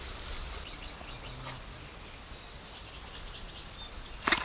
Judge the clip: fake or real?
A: real